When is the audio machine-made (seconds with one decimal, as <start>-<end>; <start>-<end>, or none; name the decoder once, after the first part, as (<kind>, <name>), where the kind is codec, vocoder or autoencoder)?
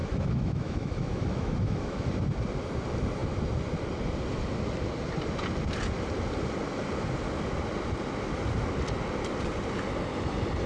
0.0-2.1 (autoencoder, DAC-VAE)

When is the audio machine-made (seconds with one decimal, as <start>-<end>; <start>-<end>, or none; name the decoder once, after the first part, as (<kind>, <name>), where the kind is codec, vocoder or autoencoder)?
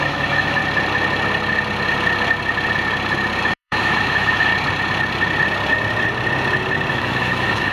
0.0-0.6 (autoencoder, DAC-VAE); 3.4-4.5; 6.9-7.7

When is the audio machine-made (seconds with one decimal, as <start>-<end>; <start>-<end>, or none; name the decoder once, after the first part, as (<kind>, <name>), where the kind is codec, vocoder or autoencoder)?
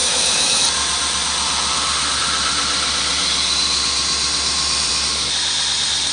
0.0-0.6 (autoencoder, DAC-VAE)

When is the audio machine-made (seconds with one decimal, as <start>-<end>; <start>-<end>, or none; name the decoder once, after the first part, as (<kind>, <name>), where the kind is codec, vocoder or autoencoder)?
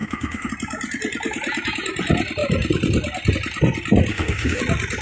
0.0-0.5 (autoencoder, DAC-VAE); 4.1-4.6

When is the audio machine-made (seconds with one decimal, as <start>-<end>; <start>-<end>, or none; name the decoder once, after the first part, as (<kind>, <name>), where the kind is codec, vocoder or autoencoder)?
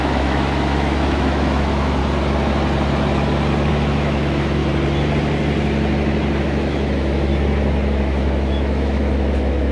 0.0-2.0 (autoencoder, DAC-VAE); 3.7-4.6; 6.4-7.3; 8.0-9.7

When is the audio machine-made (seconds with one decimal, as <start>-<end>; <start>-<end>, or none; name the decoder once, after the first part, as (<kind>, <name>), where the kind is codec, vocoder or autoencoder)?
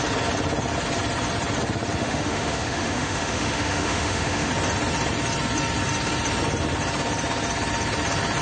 2.0-4.5 (autoencoder, DAC-VAE)